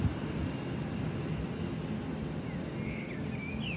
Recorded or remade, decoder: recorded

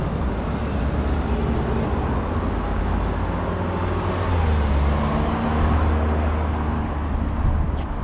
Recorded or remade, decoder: recorded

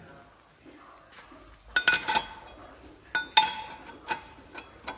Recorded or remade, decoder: recorded